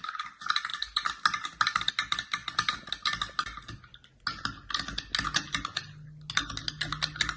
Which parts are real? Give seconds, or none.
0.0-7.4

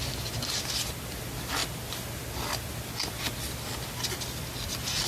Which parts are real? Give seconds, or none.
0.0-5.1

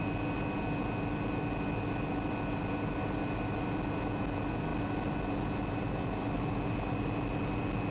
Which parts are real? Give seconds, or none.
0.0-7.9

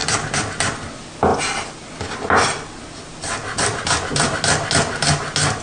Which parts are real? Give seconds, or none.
0.0-5.6